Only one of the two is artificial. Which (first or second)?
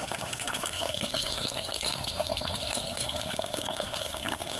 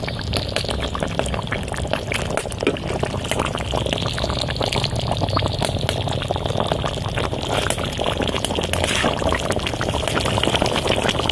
first